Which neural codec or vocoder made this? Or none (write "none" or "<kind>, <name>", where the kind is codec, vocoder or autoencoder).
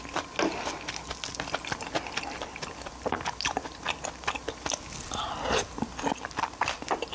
none